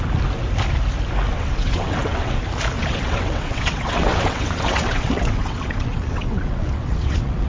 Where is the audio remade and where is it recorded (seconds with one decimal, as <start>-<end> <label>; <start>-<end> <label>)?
0.0-1.3 recorded; 1.3-2.4 remade; 2.4-2.8 recorded; 2.8-7.5 remade